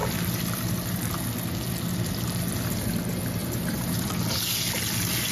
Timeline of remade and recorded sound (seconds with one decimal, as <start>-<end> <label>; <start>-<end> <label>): 0.0-3.4 recorded; 3.4-4.1 remade; 4.1-5.3 recorded